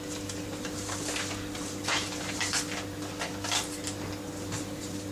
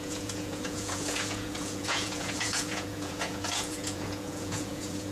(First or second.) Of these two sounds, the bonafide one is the first